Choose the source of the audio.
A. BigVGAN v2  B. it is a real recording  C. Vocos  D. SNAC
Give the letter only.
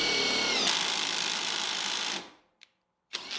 A